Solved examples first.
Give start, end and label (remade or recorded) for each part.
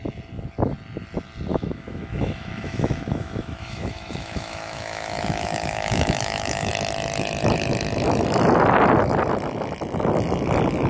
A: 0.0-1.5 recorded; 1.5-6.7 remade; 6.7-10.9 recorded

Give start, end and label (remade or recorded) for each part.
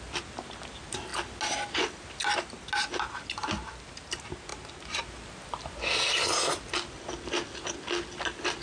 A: 0.0-8.6 recorded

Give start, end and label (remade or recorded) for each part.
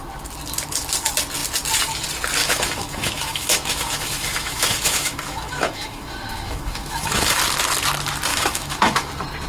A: 0.0-2.4 recorded; 2.4-7.4 remade; 7.4-8.3 recorded; 8.3-9.1 remade; 9.1-9.5 recorded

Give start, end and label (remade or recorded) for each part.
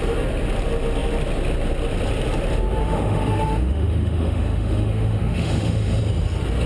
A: 0.0-2.8 recorded; 2.8-6.0 remade; 6.0-6.7 recorded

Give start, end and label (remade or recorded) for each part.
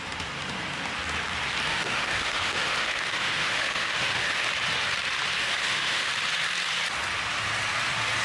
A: 0.0-1.7 recorded; 1.7-4.5 remade; 4.5-5.4 recorded; 5.4-6.1 remade; 6.1-8.2 recorded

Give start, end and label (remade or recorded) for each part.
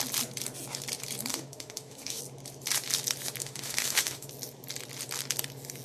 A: 0.0-1.3 recorded; 1.3-2.2 remade; 2.2-3.4 recorded; 3.4-4.3 remade; 4.3-5.8 recorded